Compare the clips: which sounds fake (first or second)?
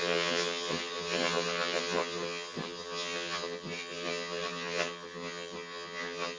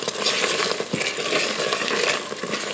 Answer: first